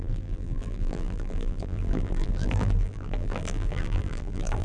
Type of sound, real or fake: fake